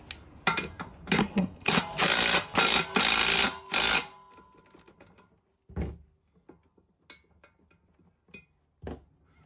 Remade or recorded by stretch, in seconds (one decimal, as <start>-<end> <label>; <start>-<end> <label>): 0.0-1.2 recorded; 1.2-1.8 remade; 1.8-9.5 recorded

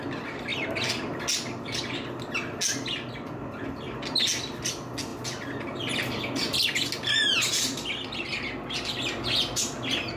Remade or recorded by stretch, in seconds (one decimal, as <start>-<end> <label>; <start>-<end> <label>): 0.0-10.2 recorded

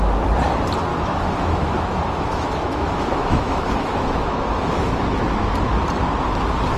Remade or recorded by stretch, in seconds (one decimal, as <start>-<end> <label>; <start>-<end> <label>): 0.0-0.9 recorded; 0.9-5.0 remade; 5.0-6.8 recorded

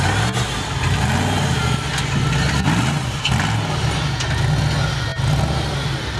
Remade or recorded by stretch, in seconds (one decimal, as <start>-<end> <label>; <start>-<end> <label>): 0.0-6.2 recorded

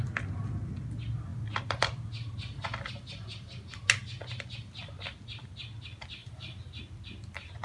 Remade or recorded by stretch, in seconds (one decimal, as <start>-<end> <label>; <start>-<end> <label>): 0.0-6.2 recorded; 6.2-6.8 remade; 6.8-7.6 recorded

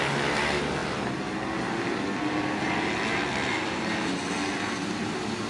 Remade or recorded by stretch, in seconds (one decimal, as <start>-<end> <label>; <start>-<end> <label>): 0.0-5.5 recorded

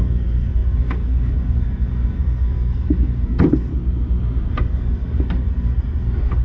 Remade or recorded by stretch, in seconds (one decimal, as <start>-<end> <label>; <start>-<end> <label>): 0.0-3.7 remade; 3.7-4.5 recorded; 4.5-6.4 remade